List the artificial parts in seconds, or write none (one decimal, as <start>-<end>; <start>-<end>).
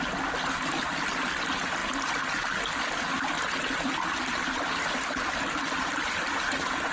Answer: none